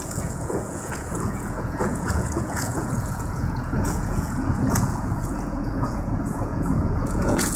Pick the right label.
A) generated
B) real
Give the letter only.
A